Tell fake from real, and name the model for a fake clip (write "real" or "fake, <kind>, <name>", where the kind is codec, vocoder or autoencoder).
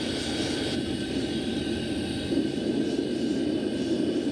real